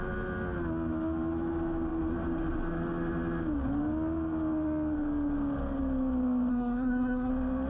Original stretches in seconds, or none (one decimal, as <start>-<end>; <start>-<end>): 0.0-6.5; 7.3-7.7